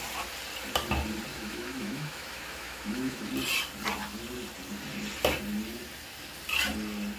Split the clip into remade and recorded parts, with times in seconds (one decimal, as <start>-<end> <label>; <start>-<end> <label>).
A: 0.0-1.3 recorded; 1.3-3.3 remade; 3.3-7.2 recorded